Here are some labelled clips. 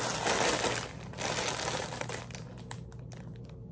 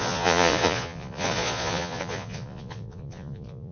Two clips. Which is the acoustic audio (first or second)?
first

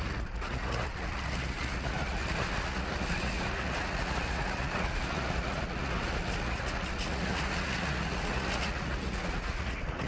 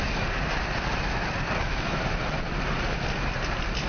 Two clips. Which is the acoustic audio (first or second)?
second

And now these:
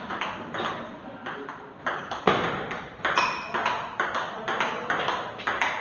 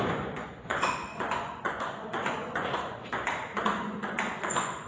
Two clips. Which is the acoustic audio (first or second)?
first